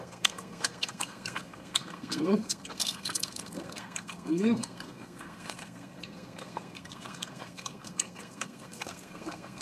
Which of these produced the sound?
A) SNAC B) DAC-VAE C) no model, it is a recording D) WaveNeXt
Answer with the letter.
A